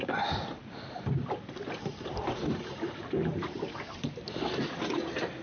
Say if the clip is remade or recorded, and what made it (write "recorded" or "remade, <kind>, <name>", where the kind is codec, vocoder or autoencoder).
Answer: recorded